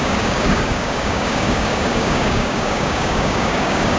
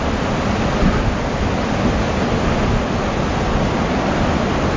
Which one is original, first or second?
second